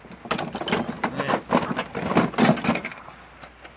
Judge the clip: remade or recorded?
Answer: recorded